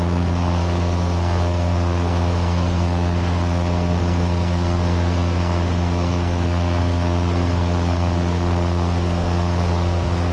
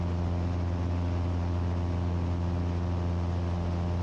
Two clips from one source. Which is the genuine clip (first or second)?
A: second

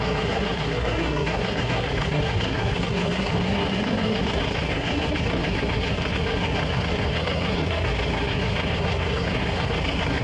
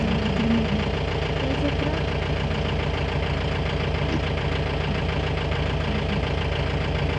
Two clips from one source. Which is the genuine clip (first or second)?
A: second